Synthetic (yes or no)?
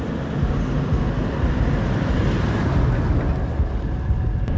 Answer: no